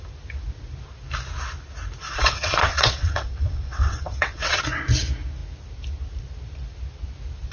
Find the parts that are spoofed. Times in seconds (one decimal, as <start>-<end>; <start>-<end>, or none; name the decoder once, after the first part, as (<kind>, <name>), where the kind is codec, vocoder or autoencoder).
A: 2.0-4.6 (vocoder, WaveNeXt)